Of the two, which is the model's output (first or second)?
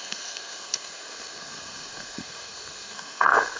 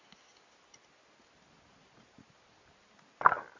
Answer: first